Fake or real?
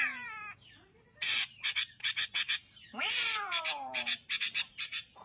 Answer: fake